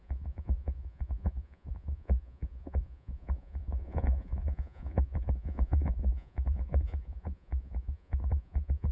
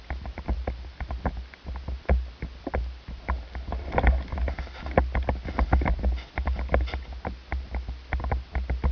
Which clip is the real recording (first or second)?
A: second